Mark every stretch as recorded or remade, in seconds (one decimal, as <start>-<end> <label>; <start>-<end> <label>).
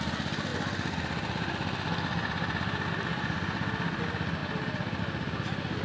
0.0-5.8 recorded